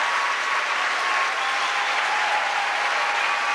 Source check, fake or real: real